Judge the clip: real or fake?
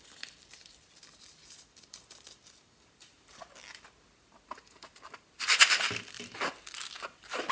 fake